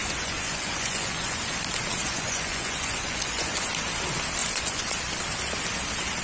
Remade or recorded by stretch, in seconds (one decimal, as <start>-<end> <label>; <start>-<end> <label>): 0.0-1.4 remade; 1.4-2.0 recorded; 2.0-3.7 remade; 3.7-4.4 recorded; 4.4-5.0 remade; 5.0-6.2 recorded